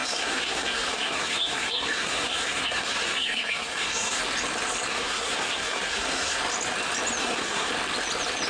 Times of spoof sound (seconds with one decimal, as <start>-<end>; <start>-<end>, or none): 0.0-4.2; 4.9-6.4; 7.2-7.7